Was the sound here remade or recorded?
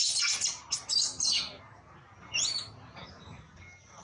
recorded